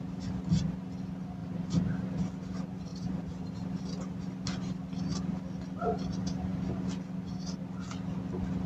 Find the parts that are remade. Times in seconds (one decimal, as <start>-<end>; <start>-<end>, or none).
1.4-1.9; 2.9-3.8